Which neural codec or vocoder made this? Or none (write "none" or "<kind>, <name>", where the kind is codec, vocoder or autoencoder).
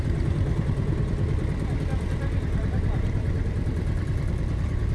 vocoder, BigVGAN v2